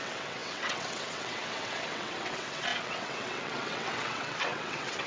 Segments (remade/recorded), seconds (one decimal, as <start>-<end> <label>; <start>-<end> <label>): 0.0-5.1 remade